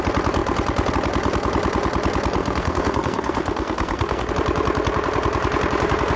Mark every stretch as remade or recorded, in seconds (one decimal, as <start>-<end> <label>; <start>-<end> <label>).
0.0-2.4 recorded; 2.4-4.3 remade; 4.3-6.2 recorded